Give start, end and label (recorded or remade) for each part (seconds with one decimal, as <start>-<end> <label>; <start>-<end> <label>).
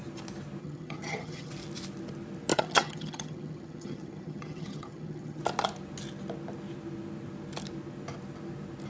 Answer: 0.0-0.6 recorded; 0.6-1.5 remade; 1.5-2.5 recorded; 2.5-5.4 remade; 5.4-8.9 recorded